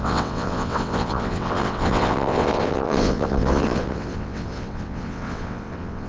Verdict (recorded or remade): remade